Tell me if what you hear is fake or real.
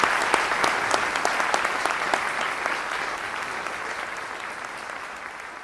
real